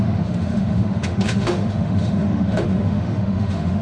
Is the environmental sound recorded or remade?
remade